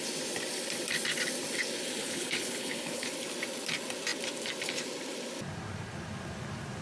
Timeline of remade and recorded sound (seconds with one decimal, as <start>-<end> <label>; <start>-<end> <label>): 0.0-2.0 recorded; 2.0-3.1 remade; 3.1-6.8 recorded